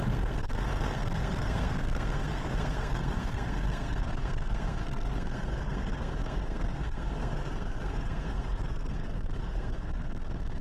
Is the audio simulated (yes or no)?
yes